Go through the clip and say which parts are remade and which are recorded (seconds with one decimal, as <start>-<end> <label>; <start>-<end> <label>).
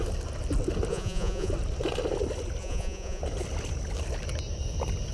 0.0-0.9 recorded; 0.9-1.5 remade; 1.5-2.6 recorded; 2.6-3.2 remade; 3.2-5.1 recorded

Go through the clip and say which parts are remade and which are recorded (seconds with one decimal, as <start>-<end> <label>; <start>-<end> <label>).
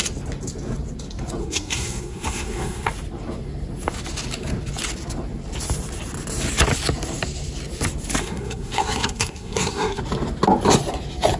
0.0-1.4 recorded; 1.4-2.9 remade; 2.9-8.2 recorded; 8.2-10.0 remade; 10.0-11.4 recorded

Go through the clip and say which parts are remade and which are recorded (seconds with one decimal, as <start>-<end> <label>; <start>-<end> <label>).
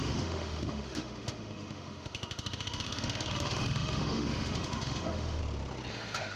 0.0-5.4 remade; 5.4-5.9 recorded; 5.9-6.4 remade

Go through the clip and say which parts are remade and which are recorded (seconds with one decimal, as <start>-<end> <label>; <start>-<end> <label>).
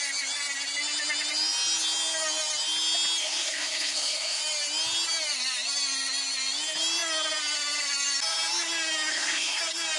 0.0-3.2 recorded; 3.2-4.4 remade; 4.4-9.1 recorded; 9.1-9.6 remade; 9.6-10.0 recorded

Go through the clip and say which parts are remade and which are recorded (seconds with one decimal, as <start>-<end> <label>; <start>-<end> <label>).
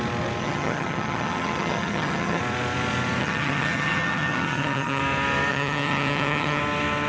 0.0-0.4 recorded; 0.4-2.4 remade; 2.4-3.2 recorded; 3.2-5.0 remade; 5.0-5.5 recorded; 5.5-6.6 remade; 6.6-7.1 recorded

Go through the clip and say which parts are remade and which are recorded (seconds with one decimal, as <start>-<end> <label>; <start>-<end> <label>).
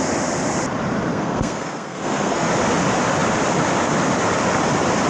0.0-1.1 recorded; 1.1-2.5 remade; 2.5-5.1 recorded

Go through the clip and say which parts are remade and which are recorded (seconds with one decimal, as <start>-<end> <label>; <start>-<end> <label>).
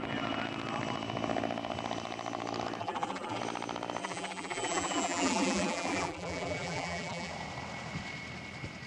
0.0-2.8 recorded; 2.8-3.4 remade; 3.4-4.0 recorded; 4.0-7.3 remade; 7.3-8.9 recorded